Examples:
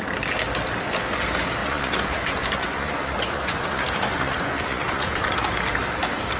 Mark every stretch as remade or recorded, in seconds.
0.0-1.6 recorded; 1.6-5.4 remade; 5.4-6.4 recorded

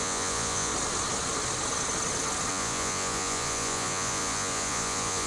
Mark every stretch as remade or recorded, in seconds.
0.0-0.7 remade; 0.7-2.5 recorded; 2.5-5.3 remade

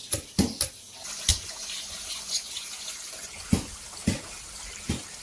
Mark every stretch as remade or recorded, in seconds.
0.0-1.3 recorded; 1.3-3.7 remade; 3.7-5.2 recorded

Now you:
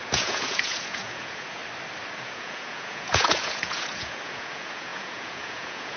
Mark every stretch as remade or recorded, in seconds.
0.0-1.6 remade; 1.6-2.2 recorded; 2.2-6.0 remade

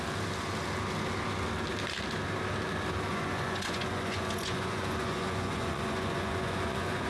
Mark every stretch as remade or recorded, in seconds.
0.0-3.1 recorded; 3.1-7.1 remade

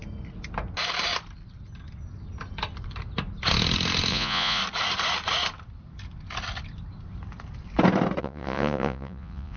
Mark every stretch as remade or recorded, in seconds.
0.0-4.1 recorded; 4.1-4.6 remade; 4.6-8.2 recorded; 8.2-9.6 remade

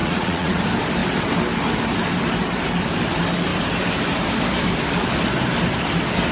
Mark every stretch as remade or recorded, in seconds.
0.0-0.6 remade; 0.6-6.3 recorded